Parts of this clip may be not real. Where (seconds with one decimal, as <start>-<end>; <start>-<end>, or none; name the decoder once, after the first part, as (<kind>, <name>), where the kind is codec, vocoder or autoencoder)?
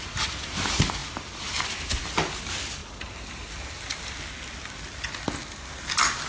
none